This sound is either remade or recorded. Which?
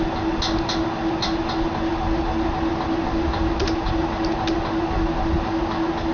recorded